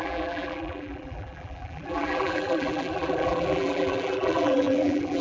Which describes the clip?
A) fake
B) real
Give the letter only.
A